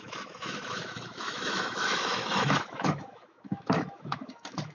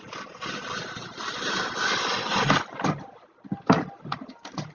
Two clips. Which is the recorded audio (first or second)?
second